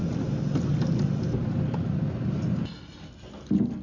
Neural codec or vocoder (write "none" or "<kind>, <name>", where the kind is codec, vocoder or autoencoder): none